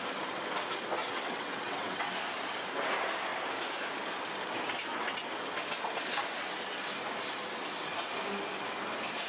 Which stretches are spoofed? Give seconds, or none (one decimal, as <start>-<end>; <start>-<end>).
1.0-2.1; 4.9-5.4